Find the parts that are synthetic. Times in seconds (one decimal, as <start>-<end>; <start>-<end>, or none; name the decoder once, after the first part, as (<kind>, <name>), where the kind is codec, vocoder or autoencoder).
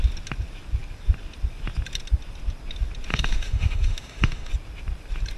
3.1-4.5 (autoencoder, DAC-VAE)